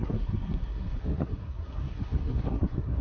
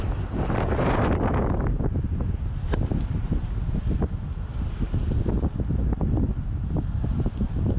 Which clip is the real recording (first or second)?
second